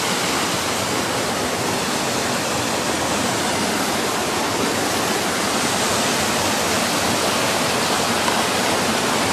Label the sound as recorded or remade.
recorded